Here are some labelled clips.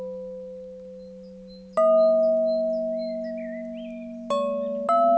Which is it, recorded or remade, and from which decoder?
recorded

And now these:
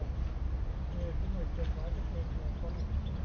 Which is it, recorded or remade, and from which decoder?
recorded